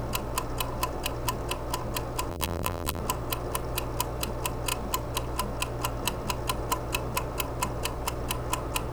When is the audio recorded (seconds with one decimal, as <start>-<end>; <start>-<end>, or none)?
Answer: 0.0-2.3; 3.0-8.9